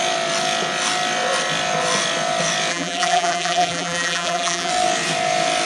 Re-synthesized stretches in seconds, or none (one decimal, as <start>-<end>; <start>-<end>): 2.7-4.7